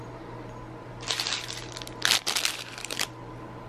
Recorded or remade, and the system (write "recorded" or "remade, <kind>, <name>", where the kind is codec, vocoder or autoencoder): recorded